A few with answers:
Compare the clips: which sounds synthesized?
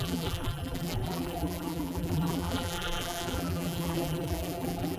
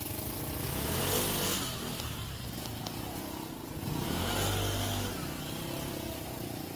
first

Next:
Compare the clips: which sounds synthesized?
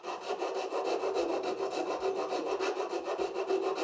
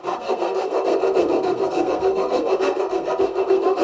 second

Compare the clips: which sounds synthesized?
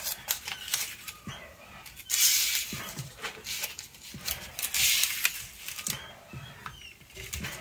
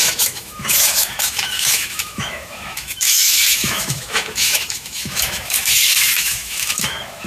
second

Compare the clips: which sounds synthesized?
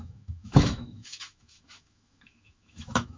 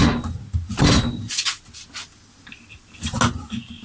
first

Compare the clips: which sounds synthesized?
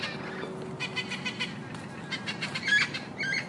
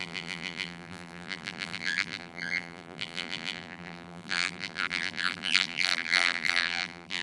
second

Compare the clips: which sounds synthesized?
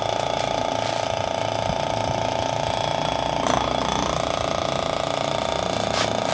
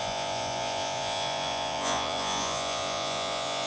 second